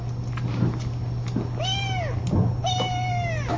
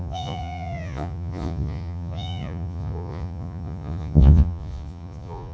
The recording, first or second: first